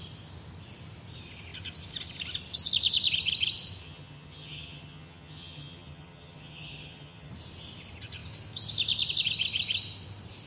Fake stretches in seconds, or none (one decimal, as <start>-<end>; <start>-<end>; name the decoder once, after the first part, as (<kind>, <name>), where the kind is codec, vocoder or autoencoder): 3.8-7.3 (vocoder, HiFi-GAN)

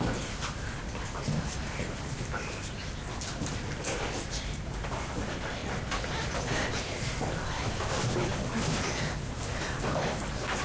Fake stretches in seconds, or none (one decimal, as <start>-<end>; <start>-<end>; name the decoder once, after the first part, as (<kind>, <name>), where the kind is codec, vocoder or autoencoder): none

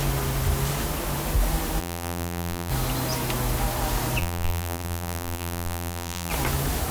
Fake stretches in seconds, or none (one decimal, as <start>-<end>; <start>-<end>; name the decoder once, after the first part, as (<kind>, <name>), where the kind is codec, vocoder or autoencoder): 1.8-2.7 (vocoder, BigVGAN v2); 4.2-6.3